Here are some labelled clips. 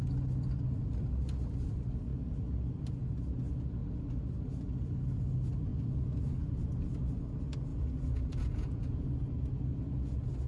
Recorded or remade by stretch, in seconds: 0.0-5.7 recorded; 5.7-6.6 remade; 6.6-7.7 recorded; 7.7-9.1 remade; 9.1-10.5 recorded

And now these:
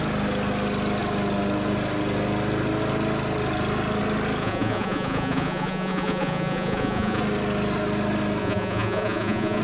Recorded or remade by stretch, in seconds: 0.0-4.4 recorded; 4.4-7.2 remade; 7.2-8.4 recorded; 8.4-9.6 remade

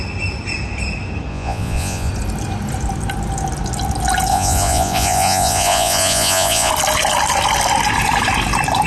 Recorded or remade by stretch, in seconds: 0.0-1.3 recorded; 1.3-2.1 remade; 2.1-4.3 recorded; 4.3-6.7 remade; 6.7-8.9 recorded